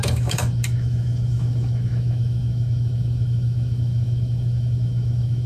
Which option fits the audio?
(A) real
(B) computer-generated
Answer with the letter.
B